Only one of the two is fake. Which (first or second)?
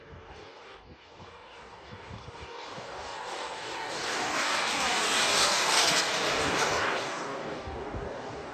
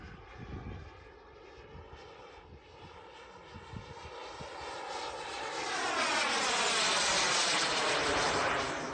first